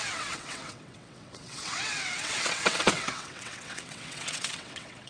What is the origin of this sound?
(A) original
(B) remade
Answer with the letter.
B